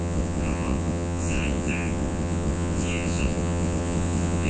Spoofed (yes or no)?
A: yes